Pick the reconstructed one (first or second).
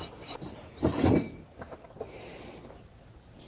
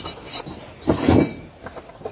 first